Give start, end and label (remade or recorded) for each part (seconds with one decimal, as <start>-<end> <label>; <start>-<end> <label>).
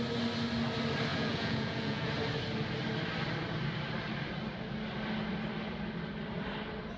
0.0-1.1 recorded; 1.1-2.1 remade; 2.1-7.0 recorded